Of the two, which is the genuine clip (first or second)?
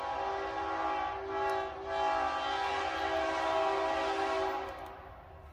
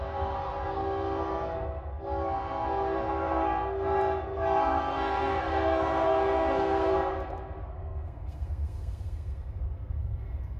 first